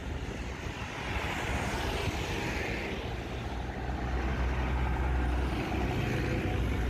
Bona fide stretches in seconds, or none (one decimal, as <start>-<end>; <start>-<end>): 0.0-6.9